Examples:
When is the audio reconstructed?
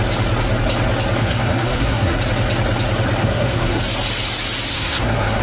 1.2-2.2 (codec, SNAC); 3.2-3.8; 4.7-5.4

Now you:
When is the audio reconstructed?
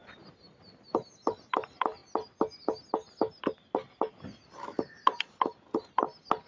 none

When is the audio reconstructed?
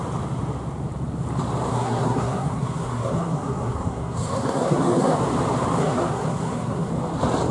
1.7-5.2 (codec, SNAC); 5.8-6.9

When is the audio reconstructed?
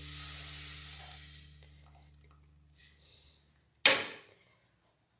none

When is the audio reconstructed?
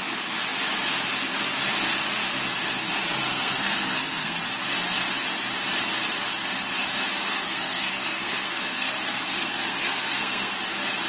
3.2-4.4 (codec, SNAC); 7.3-10.5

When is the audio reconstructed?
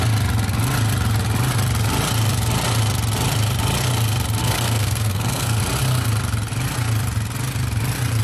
4.4-5.6 (codec, SNAC)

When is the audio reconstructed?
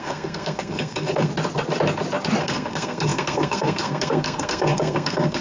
0.0-1.3 (codec, SNAC); 2.4-5.4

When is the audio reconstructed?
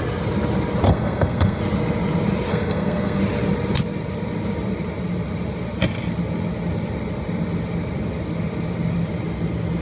0.9-1.6 (codec, SNAC); 2.5-3.2